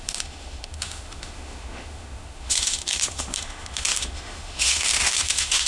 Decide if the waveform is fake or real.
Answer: fake